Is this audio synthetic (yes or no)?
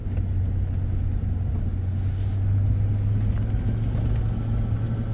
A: no